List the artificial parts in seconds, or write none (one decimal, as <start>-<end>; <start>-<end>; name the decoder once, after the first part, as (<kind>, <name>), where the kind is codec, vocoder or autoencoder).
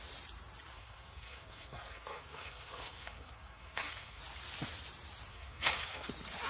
0.7-4.2 (codec, SNAC); 5.3-6.1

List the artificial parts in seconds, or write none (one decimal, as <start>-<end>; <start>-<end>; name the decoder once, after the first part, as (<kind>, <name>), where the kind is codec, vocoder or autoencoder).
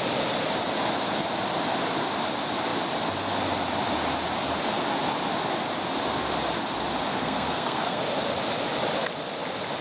7.1-8.0 (codec, SNAC)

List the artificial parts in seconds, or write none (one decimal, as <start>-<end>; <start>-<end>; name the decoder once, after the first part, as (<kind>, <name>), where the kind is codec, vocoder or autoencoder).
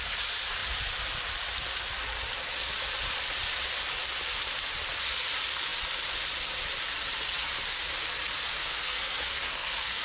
8.6-10.0 (codec, SNAC)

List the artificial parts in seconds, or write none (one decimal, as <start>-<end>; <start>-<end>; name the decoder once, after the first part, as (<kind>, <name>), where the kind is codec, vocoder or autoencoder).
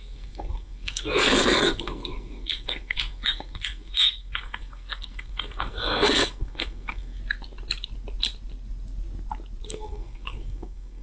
0.0-7.2 (codec, SNAC); 9.7-11.0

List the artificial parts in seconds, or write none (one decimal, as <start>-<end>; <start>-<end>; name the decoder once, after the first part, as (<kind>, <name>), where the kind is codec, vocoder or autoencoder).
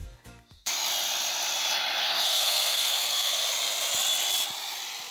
0.0-0.7 (codec, SNAC); 2.0-3.4